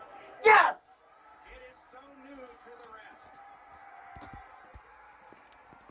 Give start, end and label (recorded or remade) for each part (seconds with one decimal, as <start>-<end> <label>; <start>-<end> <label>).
0.0-5.9 recorded